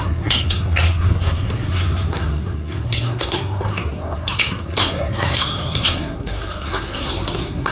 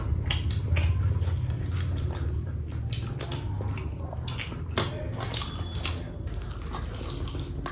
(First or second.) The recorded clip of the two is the second